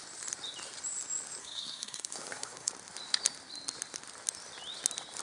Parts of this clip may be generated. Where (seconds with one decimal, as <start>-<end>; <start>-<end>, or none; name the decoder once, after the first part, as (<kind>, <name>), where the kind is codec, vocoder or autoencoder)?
1.4-2.7 (codec, SNAC)